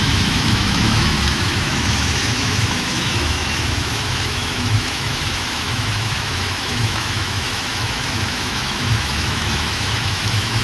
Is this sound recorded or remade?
remade